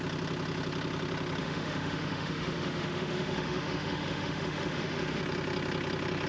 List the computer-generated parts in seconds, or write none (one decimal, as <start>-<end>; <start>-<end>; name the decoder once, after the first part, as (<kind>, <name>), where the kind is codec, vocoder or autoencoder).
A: 1.4-5.2 (autoencoder, DAC-VAE)